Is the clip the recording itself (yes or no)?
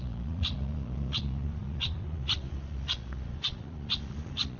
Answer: no